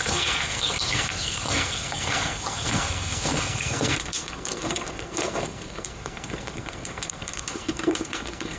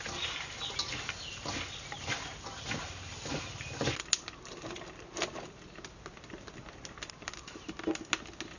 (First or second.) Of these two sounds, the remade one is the first